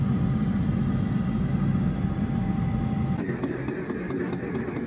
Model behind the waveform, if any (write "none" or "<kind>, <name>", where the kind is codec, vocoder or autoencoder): none